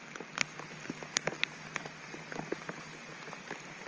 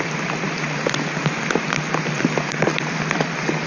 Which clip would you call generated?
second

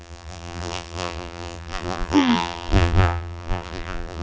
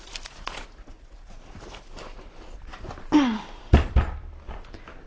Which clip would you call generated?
first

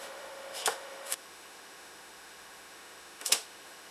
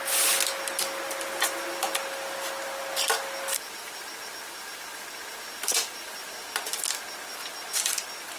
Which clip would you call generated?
first